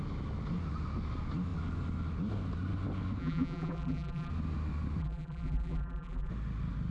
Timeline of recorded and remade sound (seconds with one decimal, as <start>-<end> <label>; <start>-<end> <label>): 0.0-3.2 recorded; 3.2-4.3 remade; 4.3-5.0 recorded; 5.0-6.3 remade; 6.3-6.9 recorded